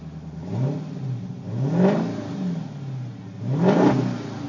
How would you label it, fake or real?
real